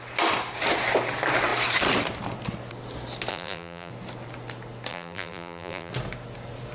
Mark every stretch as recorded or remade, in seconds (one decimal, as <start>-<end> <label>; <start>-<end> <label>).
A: 0.0-3.3 recorded; 3.3-3.9 remade; 3.9-4.9 recorded; 4.9-5.9 remade; 5.9-6.7 recorded